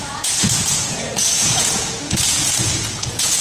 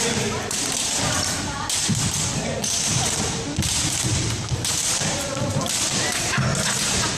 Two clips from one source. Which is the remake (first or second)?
first